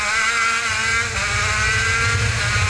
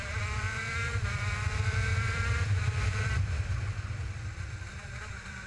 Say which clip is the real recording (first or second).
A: first